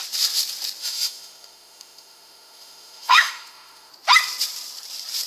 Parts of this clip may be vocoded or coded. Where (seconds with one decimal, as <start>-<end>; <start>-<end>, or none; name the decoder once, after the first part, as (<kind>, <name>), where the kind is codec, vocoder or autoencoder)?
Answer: 0.8-3.9 (autoencoder, DAC-VAE)